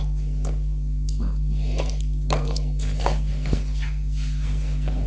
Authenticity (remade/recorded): remade